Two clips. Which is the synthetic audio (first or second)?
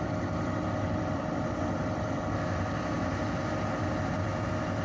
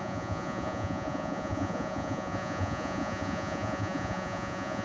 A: second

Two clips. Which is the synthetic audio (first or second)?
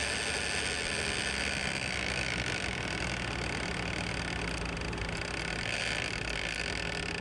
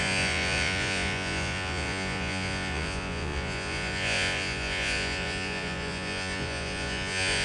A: second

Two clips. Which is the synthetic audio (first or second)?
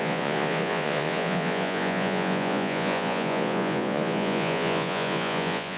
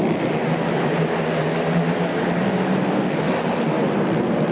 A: first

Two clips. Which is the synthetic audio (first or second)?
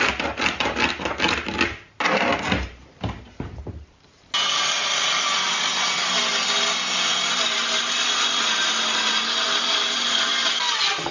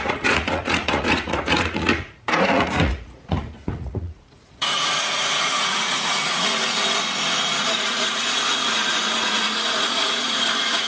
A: second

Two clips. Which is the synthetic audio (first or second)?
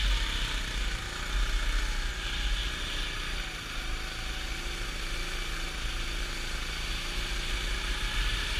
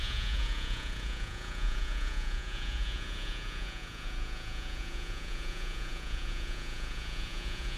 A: second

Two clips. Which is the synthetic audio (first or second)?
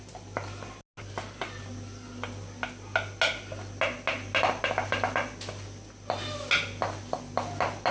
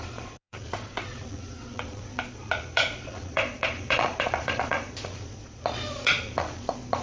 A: second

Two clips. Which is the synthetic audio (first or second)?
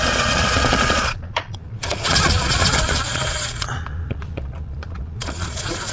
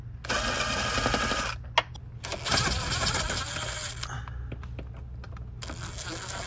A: first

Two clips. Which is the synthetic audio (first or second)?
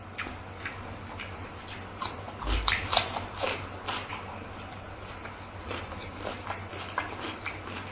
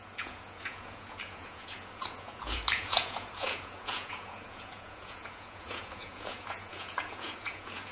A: second